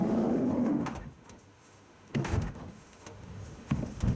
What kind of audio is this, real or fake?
fake